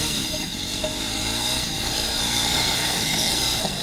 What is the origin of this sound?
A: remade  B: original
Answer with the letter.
A